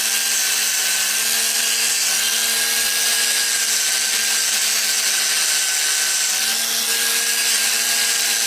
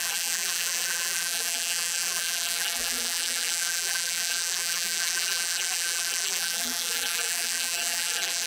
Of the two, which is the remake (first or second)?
second